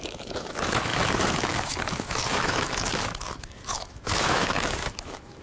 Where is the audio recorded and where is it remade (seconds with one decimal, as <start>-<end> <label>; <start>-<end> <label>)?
0.0-5.4 remade